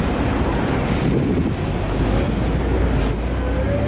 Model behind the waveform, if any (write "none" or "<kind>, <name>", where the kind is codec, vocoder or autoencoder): none